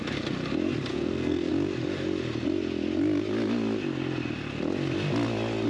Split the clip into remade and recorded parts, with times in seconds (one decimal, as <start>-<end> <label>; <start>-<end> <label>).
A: 0.0-0.9 recorded; 0.9-1.5 remade; 1.5-5.7 recorded